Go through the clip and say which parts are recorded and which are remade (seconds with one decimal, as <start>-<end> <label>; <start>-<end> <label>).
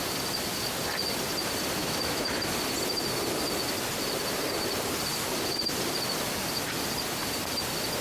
0.0-1.8 recorded; 1.8-2.4 remade; 2.4-8.0 recorded